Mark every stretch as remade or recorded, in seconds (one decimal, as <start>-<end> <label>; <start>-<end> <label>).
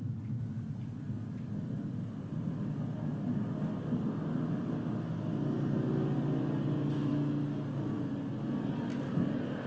0.0-9.7 recorded